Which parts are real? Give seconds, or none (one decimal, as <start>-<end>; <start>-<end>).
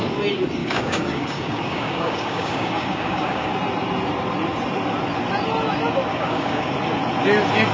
0.0-0.6; 3.5-6.1; 6.7-7.7